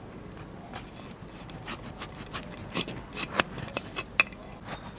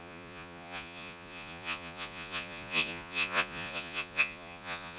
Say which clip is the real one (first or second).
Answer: first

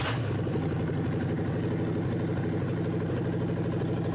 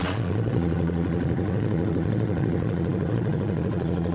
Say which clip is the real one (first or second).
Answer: first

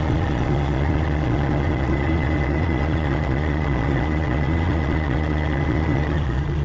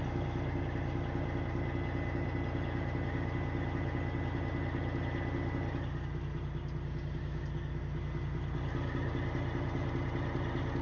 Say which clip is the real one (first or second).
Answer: second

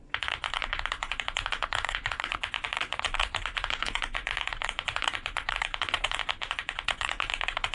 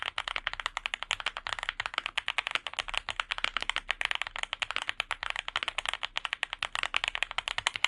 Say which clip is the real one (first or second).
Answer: second